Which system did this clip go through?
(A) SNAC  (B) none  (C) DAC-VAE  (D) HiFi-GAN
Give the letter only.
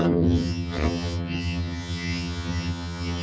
D